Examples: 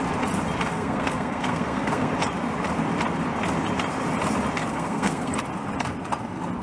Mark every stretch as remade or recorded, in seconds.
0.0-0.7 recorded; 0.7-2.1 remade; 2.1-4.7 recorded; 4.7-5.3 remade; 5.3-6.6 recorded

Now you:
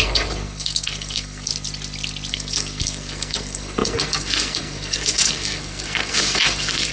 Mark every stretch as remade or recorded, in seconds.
0.0-1.5 remade; 1.5-2.3 recorded; 2.3-6.9 remade

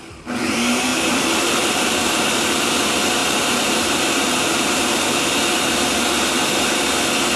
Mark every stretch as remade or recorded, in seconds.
0.0-0.9 recorded; 0.9-2.7 remade; 2.7-3.2 recorded; 3.2-4.8 remade; 4.8-7.4 recorded